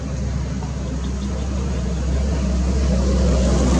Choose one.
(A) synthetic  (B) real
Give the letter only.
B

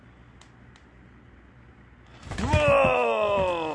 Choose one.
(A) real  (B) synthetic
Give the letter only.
A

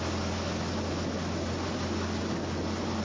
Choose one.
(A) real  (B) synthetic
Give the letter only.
A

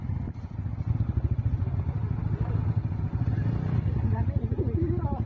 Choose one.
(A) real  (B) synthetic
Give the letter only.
A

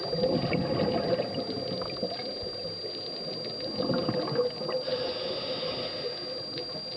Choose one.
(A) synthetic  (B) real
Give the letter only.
B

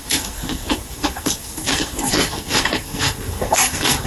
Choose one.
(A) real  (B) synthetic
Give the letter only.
B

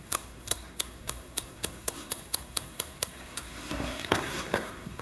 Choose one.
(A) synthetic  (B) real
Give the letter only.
A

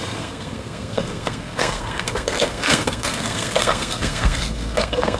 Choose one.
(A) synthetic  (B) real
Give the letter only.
A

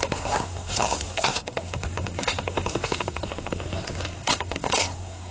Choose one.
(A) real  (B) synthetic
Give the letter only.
B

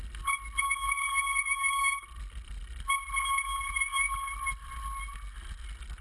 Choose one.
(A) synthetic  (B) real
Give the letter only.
B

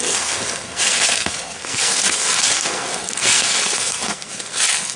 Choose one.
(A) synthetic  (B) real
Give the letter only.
A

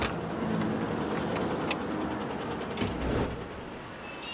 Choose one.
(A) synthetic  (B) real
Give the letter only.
B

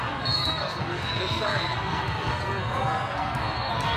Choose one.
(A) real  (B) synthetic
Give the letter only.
B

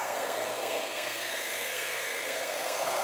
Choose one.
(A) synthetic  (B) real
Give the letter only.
A